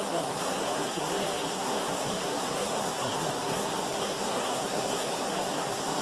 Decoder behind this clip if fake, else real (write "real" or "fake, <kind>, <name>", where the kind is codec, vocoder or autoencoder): fake, codec, SNAC